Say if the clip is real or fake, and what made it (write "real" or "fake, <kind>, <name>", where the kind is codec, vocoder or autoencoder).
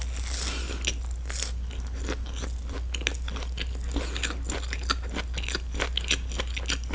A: real